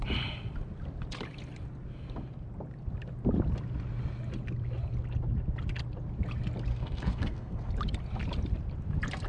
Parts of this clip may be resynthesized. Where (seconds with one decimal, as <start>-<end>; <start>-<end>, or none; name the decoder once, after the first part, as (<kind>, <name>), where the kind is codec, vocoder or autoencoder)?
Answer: 6.7-7.7 (codec, SNAC)